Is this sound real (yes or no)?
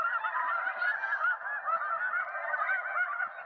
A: yes